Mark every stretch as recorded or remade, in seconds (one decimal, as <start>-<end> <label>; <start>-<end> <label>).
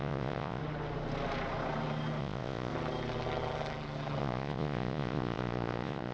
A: 0.0-0.6 remade; 0.6-2.2 recorded; 2.2-2.7 remade; 2.7-4.2 recorded; 4.2-6.1 remade